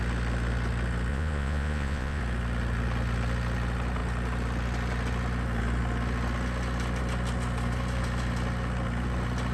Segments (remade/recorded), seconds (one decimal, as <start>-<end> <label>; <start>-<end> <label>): 0.0-1.1 recorded; 1.1-2.2 remade; 2.2-9.5 recorded